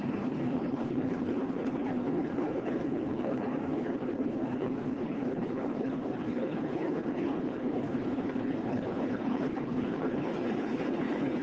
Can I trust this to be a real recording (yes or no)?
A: no